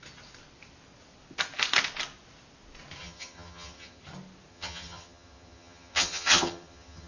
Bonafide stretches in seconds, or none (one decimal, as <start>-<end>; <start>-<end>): 0.0-3.0; 4.0-4.5